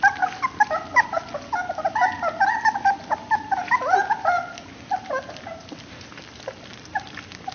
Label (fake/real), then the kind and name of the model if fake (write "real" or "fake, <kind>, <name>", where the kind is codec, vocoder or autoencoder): real